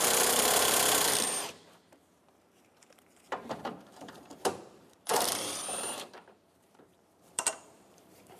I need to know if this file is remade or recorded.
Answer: remade